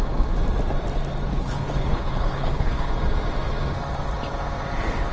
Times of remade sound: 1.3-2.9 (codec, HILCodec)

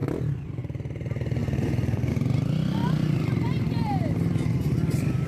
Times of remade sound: 0.0-0.6 (vocoder, BigVGAN v2); 2.8-5.3